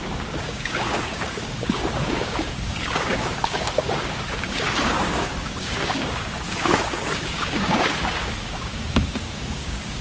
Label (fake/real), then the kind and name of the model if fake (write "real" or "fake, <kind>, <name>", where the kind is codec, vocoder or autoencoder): fake, codec, DAC